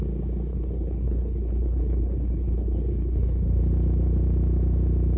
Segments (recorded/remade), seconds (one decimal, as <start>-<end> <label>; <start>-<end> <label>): 0.0-0.5 recorded; 0.5-3.6 remade; 3.6-5.2 recorded